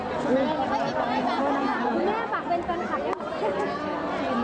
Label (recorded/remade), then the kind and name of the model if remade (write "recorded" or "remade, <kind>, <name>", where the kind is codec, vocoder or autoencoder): recorded